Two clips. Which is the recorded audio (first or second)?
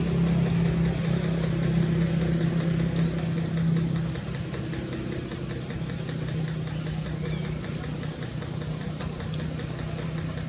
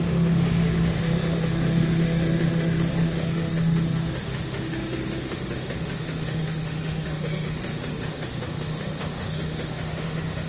first